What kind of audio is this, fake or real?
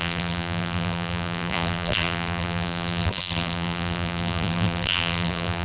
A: fake